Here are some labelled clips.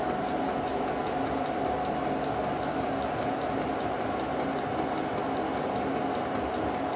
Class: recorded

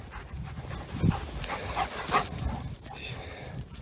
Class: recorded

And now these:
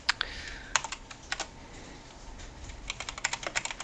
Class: recorded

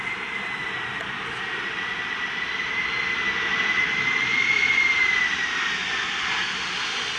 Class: recorded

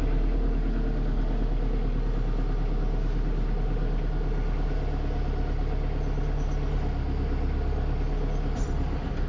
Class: recorded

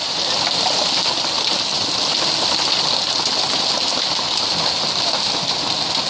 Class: recorded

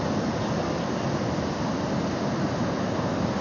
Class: recorded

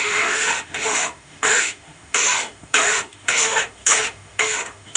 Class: remade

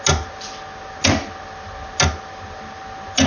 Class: recorded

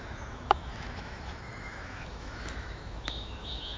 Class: remade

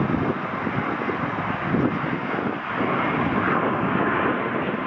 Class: recorded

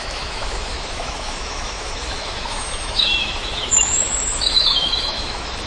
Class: remade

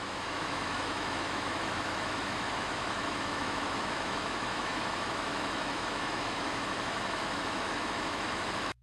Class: remade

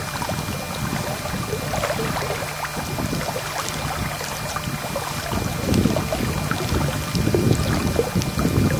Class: recorded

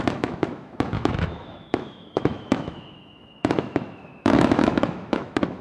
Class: remade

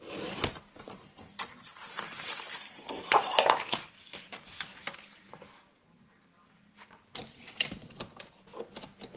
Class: recorded